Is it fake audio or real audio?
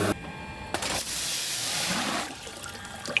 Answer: real